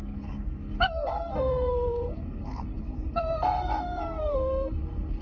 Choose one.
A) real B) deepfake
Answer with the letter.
B